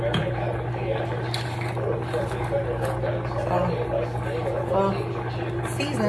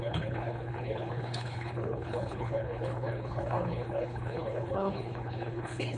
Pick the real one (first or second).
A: first